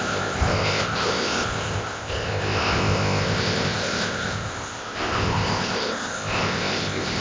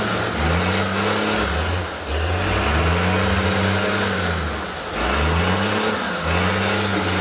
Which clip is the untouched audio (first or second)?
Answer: second